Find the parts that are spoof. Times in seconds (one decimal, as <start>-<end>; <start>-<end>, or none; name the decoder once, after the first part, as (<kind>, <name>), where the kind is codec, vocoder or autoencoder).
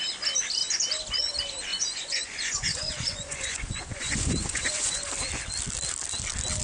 1.7-5.1 (vocoder, Vocos)